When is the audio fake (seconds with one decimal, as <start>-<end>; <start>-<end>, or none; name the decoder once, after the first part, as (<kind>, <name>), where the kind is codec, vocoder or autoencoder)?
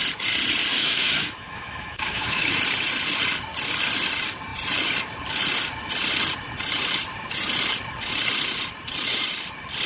0.8-2.6 (autoencoder, DAC-VAE)